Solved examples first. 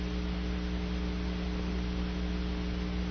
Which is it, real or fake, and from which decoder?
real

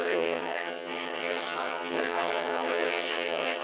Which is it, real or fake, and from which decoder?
fake, vocoder, HiFi-GAN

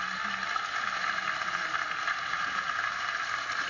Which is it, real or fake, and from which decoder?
real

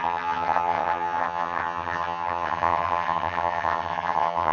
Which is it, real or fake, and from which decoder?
fake, vocoder, HiFi-GAN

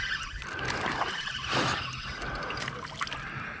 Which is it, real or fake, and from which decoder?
real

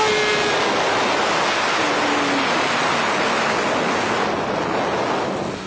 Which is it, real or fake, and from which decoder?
real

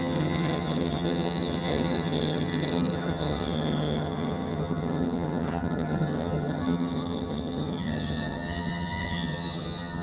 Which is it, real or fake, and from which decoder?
fake, vocoder, HiFi-GAN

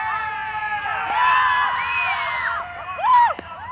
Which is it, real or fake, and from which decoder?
real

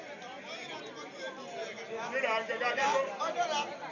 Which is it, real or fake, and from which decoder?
real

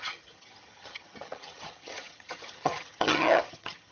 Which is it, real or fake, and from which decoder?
fake, vocoder, HiFi-GAN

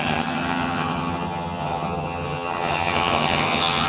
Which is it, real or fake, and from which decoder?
fake, vocoder, HiFi-GAN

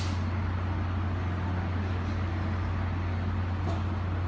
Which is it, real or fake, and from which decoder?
real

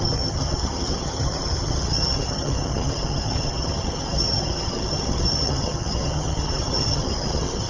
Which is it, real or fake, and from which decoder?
fake, vocoder, HiFi-GAN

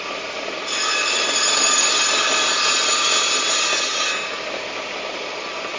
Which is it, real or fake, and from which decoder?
real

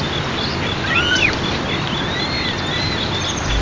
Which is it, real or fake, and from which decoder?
real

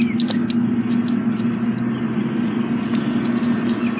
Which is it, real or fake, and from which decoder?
real